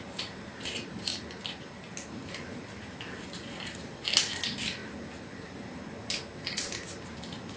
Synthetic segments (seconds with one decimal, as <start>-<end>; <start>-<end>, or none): none